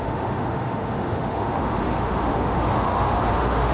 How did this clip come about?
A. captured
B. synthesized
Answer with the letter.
B